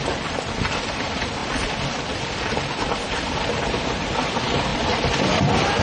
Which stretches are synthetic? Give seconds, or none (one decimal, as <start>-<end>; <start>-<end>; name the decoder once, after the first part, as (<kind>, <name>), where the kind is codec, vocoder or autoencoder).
4.7-5.8 (vocoder, BigVGAN v2)